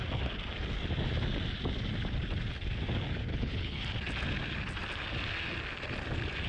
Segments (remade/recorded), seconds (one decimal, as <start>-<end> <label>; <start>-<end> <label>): 0.0-3.3 recorded; 3.3-3.8 remade; 3.8-6.5 recorded